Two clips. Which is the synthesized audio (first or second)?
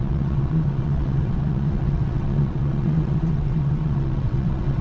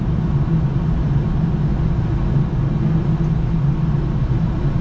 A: first